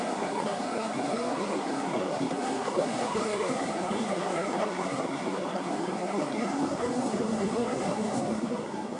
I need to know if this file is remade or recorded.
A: remade